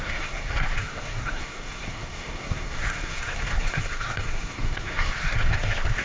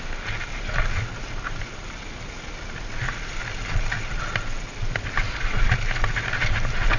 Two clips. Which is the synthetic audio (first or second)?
first